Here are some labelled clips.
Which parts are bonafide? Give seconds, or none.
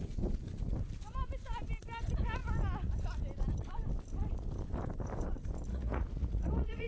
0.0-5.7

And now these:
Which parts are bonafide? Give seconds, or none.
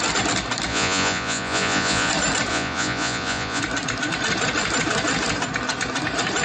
0.0-0.7; 2.1-2.5; 3.6-6.4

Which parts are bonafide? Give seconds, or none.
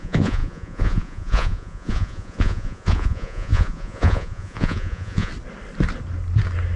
5.3-6.8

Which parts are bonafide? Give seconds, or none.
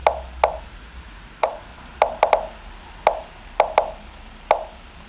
0.0-0.6; 1.7-5.1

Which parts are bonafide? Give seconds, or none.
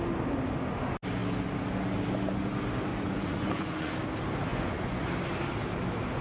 0.0-2.9; 3.9-4.5; 5.1-6.2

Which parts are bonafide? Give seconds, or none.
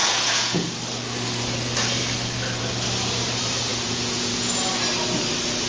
0.7-3.7; 4.7-5.7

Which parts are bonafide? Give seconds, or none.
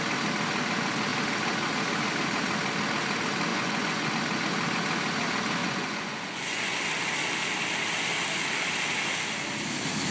0.0-3.5; 4.1-5.6; 6.8-10.1